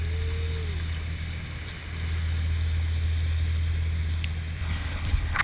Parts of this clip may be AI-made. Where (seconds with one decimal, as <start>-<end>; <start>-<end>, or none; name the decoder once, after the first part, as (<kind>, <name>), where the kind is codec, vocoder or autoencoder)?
4.6-5.4 (codec, HILCodec)